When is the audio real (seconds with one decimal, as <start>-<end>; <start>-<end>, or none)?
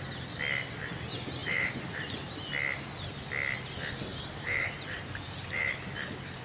0.0-1.4; 2.4-4.1; 5.7-6.4